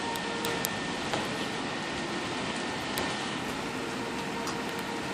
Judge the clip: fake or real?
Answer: real